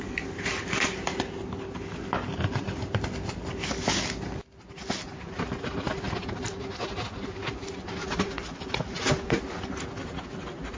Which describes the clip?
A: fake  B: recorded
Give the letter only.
B